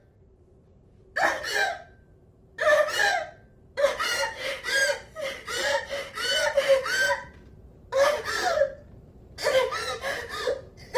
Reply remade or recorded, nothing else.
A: remade